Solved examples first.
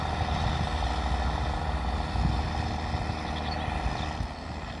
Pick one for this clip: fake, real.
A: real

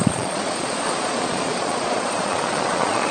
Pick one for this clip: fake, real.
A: fake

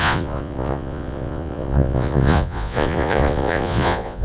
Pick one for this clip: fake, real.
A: fake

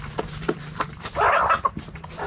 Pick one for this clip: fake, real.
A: real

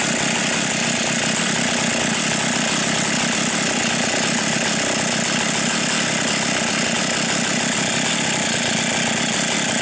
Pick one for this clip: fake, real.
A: real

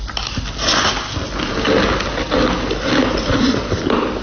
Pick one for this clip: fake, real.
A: real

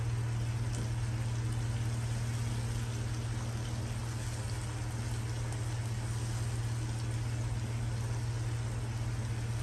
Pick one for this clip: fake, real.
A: real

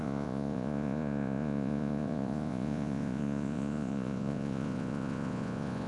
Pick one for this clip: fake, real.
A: fake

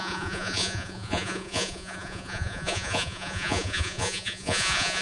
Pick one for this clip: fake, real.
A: fake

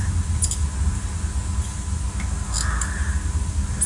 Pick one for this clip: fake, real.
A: real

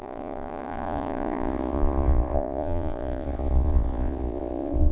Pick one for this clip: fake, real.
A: fake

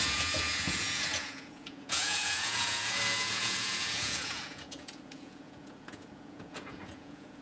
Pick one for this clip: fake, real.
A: fake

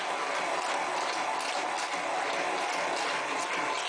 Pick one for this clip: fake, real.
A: real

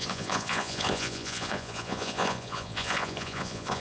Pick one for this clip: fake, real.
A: fake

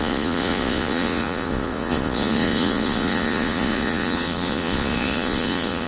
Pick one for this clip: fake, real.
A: fake